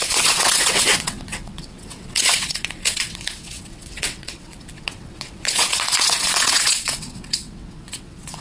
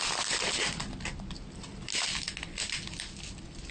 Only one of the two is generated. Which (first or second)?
first